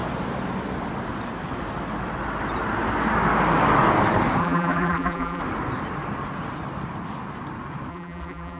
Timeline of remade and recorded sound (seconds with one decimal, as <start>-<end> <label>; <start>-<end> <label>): 0.0-4.4 recorded; 4.4-5.4 remade; 5.4-7.9 recorded; 7.9-8.6 remade